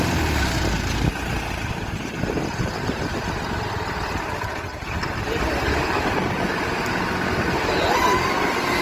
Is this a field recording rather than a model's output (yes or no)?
yes